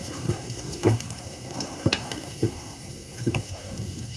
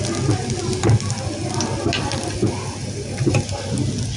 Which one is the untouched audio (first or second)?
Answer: second